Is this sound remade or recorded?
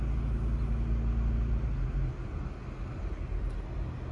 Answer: recorded